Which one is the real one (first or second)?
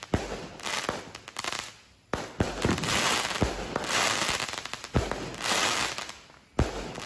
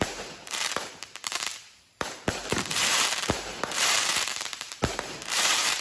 first